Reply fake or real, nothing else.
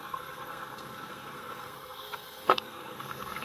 fake